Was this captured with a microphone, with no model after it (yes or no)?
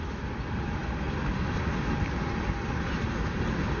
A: yes